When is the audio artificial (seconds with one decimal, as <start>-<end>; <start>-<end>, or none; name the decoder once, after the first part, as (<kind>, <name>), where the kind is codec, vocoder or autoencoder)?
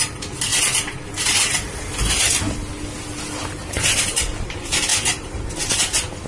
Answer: none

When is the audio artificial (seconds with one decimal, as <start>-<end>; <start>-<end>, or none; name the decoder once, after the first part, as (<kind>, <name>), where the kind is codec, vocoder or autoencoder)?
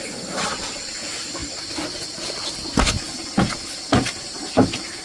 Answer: none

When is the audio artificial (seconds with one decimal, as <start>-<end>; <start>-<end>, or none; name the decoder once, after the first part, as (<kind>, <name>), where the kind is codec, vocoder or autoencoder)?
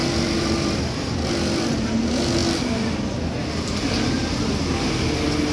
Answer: 0.0-1.9 (vocoder, BigVGAN v2)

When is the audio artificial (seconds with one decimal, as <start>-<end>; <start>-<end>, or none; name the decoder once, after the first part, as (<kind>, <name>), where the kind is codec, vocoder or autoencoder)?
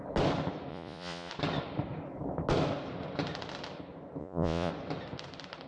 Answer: 0.7-1.3 (vocoder, Vocos); 4.2-4.7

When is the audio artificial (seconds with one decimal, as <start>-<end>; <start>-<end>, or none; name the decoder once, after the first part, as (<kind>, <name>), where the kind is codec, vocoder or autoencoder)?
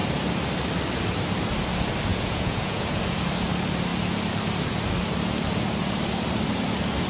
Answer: 2.1-3.0 (vocoder, Vocos)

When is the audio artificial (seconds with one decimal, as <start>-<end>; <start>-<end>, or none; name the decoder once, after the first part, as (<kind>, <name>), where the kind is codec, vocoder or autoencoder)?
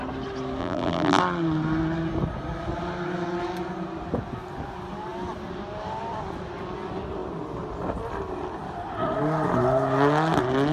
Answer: 0.6-1.2 (vocoder, BigVGAN v2)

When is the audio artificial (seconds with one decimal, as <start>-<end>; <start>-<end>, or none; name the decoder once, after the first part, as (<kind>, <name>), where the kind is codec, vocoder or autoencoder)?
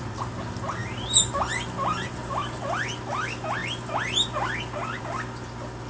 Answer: none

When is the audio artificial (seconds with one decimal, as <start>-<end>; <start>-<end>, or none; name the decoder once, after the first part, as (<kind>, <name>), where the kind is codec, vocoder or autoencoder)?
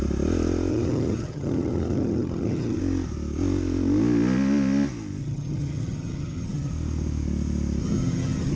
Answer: 0.7-2.8 (vocoder, HiFi-GAN); 5.2-6.7; 7.8-8.6